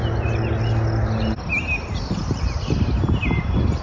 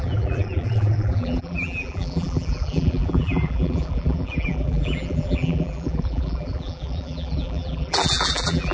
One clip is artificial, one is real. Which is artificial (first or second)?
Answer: second